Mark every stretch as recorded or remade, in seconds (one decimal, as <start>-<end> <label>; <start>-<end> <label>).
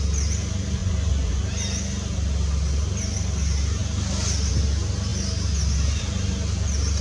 0.0-0.8 recorded; 0.8-1.4 remade; 1.4-7.0 recorded